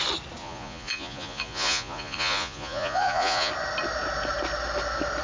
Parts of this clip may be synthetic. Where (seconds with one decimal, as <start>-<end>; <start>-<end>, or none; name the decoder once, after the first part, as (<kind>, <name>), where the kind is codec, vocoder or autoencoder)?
0.4-3.5 (vocoder, Vocos)